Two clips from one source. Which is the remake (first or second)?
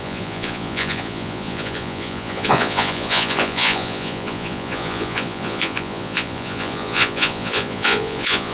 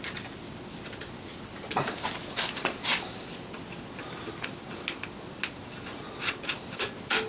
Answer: first